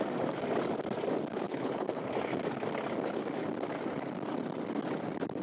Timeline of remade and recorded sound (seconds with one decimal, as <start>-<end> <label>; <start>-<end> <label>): 0.0-1.3 recorded; 1.3-2.1 remade; 2.1-5.4 recorded